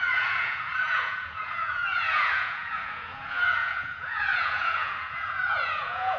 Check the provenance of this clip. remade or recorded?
remade